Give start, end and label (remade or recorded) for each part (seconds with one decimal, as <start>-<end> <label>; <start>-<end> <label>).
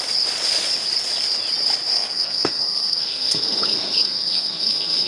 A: 0.0-1.9 recorded; 1.9-5.1 remade